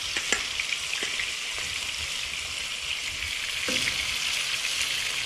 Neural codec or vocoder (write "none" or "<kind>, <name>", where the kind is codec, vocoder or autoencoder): none